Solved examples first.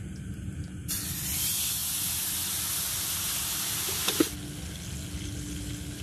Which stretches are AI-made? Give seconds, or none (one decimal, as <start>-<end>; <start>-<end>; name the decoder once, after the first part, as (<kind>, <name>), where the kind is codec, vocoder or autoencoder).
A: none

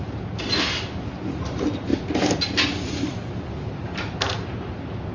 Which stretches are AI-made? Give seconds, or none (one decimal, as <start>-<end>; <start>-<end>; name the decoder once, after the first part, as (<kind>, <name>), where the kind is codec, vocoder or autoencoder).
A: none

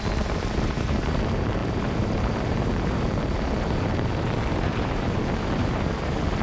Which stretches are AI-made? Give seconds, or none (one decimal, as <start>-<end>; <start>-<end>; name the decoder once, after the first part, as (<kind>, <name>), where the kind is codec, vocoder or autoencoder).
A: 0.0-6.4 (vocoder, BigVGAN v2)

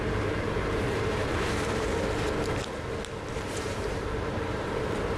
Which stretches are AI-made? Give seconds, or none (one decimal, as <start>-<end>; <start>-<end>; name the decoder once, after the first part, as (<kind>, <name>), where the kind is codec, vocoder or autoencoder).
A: 0.0-1.9 (vocoder, BigVGAN v2); 3.3-5.2

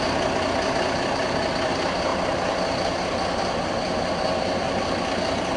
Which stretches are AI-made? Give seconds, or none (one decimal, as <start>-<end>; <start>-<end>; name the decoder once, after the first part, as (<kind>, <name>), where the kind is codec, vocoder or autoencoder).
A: none

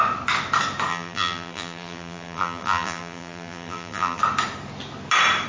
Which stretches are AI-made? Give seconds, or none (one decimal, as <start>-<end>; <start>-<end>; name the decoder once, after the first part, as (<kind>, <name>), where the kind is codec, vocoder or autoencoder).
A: 0.9-4.2 (vocoder, BigVGAN v2)

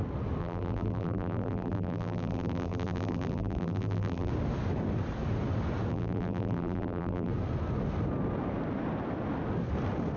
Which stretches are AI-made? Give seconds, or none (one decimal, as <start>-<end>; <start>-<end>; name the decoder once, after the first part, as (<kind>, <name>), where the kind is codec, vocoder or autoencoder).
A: 0.4-4.3 (vocoder, BigVGAN v2); 5.9-7.3

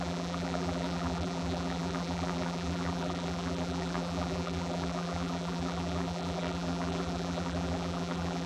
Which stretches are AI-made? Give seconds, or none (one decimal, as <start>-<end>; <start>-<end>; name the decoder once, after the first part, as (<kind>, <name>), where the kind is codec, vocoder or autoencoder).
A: 0.0-8.5 (vocoder, BigVGAN v2)